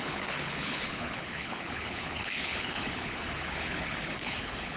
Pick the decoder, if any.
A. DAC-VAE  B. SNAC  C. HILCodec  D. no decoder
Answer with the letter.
C